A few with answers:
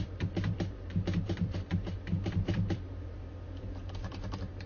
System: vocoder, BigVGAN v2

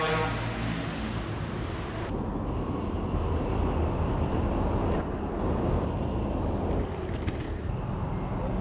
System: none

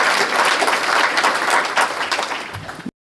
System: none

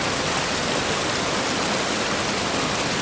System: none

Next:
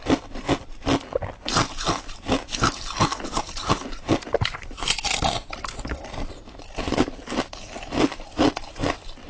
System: none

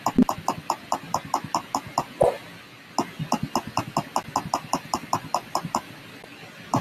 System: none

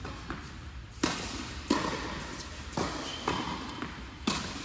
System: none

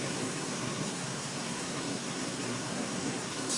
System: codec, SNAC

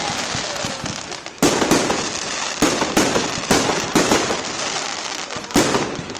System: none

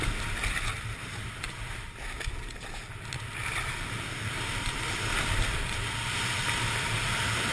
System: none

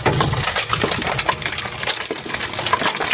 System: none